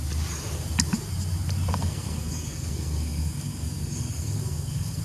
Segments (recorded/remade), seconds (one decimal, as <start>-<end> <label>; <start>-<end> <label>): 0.0-1.7 recorded; 1.7-5.0 remade